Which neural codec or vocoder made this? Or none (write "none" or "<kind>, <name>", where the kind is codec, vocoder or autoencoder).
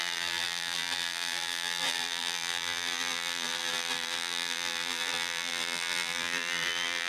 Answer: vocoder, BigVGAN v2